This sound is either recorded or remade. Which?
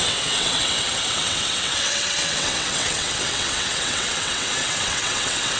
remade